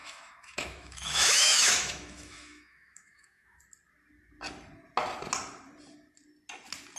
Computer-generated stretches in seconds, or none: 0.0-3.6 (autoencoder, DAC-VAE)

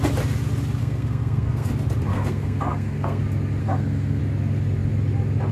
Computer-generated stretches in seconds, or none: 0.8-1.7 (codec, SNAC); 2.1-3.2; 3.6-4.2

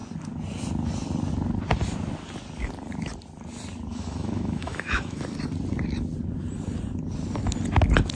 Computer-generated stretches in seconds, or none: 3.9-5.2 (autoencoder, DAC-VAE)

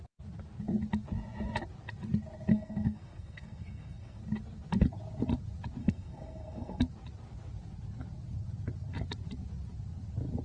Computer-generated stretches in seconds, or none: 2.5-4.2 (codec, SNAC); 5.8-6.8

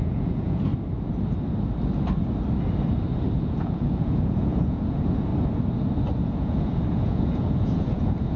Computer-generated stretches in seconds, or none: 0.0-0.7 (vocoder, Vocos); 3.3-5.3; 6.2-8.4

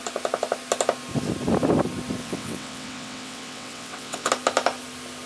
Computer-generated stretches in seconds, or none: 2.2-4.3 (vocoder, WaveNeXt)

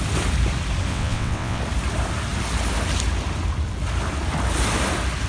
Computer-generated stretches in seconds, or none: 0.9-1.6 (vocoder, WaveNeXt)

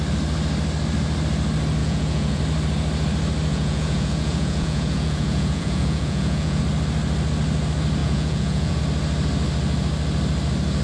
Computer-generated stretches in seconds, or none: 1.8-2.4 (vocoder, Vocos); 3.5-6.6; 8.0-8.8